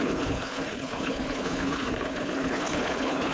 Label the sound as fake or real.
fake